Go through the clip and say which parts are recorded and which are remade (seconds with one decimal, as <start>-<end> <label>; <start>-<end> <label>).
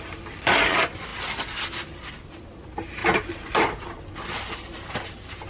0.0-3.0 remade; 3.0-5.5 recorded